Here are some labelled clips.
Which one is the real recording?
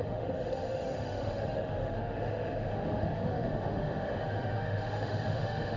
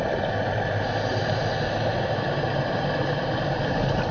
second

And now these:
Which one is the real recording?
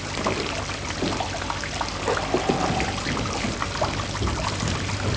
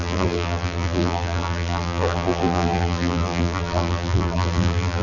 first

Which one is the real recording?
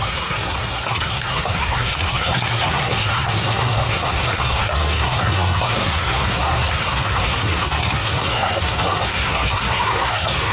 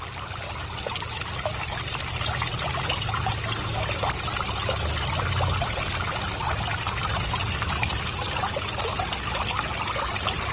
second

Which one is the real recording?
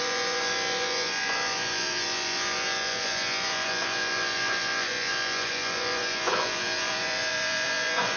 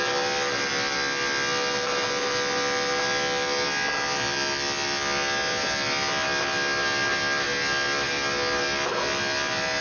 second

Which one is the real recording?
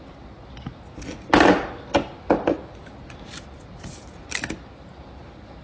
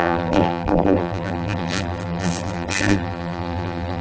first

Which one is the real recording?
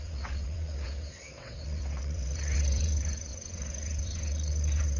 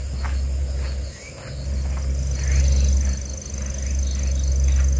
second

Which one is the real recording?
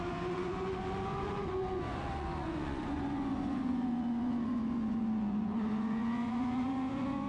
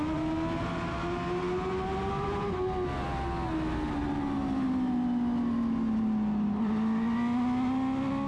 second